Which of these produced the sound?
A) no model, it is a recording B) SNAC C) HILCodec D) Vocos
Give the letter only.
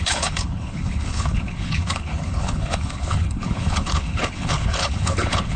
C